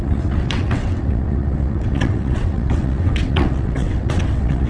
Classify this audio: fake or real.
fake